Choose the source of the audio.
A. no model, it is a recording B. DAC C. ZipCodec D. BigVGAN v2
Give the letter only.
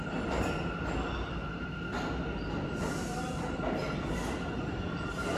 A